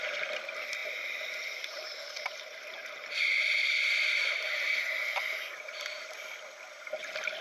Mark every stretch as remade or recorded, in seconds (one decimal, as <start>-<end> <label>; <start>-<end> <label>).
0.0-0.8 recorded; 0.8-5.2 remade; 5.2-7.4 recorded